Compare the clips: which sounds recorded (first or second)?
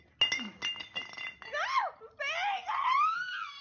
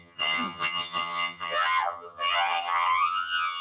first